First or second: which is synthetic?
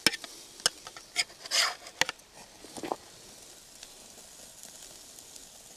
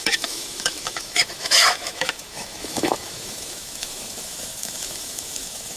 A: second